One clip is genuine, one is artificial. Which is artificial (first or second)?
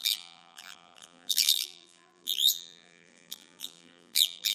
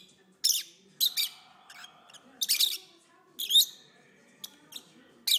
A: first